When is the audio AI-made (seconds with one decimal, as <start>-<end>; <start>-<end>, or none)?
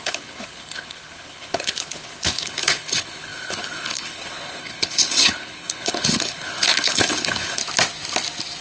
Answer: 0.0-7.6